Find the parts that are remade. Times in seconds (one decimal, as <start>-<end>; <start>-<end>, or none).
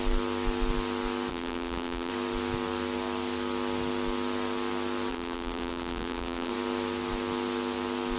1.3-2.1; 5.1-6.5